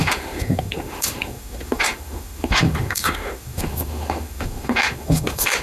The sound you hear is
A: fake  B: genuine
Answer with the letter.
A